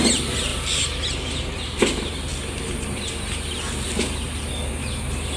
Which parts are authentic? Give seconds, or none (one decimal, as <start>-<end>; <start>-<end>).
0.0-5.4